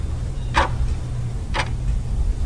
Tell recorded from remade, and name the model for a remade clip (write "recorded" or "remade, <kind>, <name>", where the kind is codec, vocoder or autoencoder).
recorded